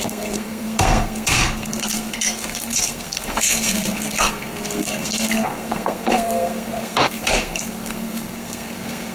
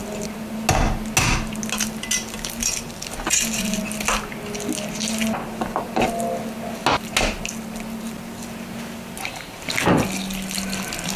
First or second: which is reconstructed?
first